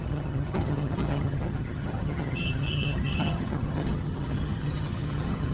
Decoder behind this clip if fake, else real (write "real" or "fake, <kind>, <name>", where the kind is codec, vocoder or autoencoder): fake, vocoder, HiFi-GAN